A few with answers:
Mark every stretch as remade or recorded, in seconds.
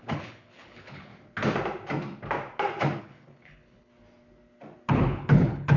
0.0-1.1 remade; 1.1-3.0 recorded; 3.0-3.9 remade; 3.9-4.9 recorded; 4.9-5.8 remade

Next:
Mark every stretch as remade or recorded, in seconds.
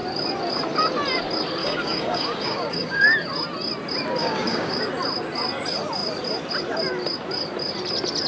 0.0-1.6 recorded; 1.6-3.0 remade; 3.0-4.2 recorded; 4.2-4.8 remade; 4.8-8.3 recorded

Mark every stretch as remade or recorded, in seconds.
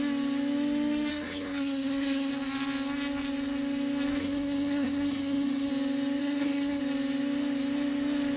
0.0-1.1 recorded; 1.1-2.3 remade; 2.3-4.2 recorded; 4.2-5.7 remade; 5.7-6.2 recorded; 6.2-6.8 remade; 6.8-8.4 recorded